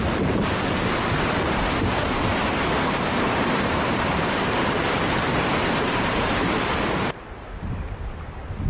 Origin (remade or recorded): remade